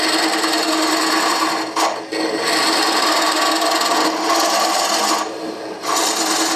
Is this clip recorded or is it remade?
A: recorded